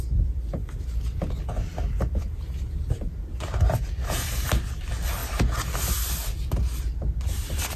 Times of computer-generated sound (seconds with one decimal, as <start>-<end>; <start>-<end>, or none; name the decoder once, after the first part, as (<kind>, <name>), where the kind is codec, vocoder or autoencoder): none